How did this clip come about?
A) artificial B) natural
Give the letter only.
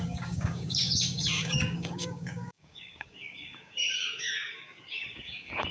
A